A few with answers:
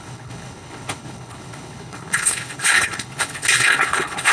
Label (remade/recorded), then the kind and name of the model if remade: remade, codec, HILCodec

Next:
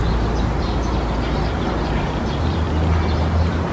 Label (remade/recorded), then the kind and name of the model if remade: recorded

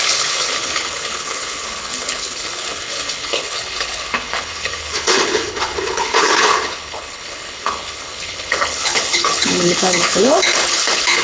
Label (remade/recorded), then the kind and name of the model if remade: remade, codec, HILCodec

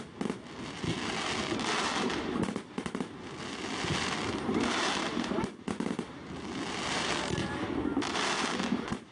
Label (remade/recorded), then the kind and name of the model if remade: recorded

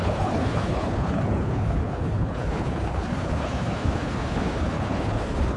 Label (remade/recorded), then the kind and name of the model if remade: remade, codec, HILCodec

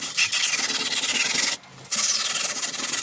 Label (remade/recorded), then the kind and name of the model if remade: recorded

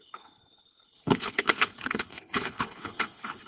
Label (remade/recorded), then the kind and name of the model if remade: remade, codec, HILCodec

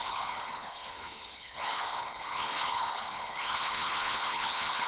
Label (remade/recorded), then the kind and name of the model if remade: remade, codec, HILCodec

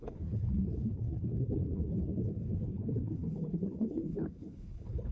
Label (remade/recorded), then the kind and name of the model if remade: remade, codec, HILCodec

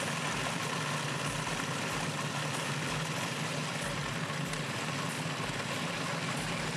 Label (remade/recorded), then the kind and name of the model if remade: recorded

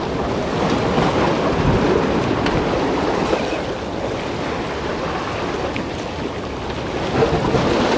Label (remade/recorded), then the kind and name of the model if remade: recorded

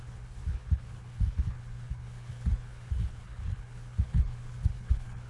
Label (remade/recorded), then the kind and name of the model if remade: remade, codec, HILCodec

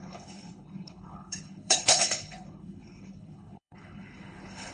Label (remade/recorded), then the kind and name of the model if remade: remade, codec, HILCodec